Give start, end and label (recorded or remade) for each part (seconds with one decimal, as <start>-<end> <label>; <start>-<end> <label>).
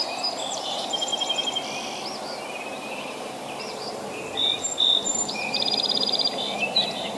0.0-1.1 remade; 1.1-3.6 recorded; 3.6-7.2 remade